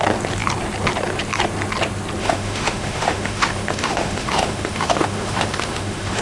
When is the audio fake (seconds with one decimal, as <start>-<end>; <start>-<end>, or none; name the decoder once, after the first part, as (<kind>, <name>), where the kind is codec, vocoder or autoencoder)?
2.2-6.2 (autoencoder, DAC-VAE)